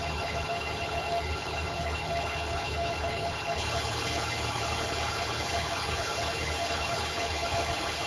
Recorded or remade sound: remade